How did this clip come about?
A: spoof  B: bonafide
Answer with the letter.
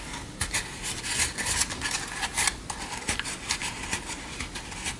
B